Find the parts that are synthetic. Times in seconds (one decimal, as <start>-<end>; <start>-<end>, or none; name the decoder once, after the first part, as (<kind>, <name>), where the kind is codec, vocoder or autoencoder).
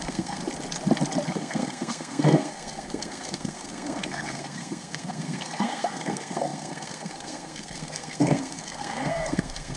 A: 0.0-0.4 (codec, SNAC); 1.3-9.8